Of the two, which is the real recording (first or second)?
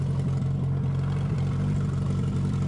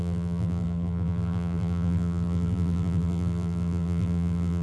first